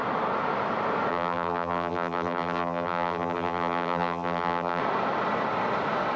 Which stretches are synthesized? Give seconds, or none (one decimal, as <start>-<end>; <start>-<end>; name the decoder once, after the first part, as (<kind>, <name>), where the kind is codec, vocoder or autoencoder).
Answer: 1.1-4.8 (vocoder, BigVGAN v2)